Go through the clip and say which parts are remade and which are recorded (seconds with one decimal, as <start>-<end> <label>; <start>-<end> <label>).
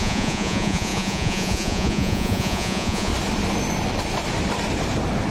0.0-3.1 remade; 3.1-5.3 recorded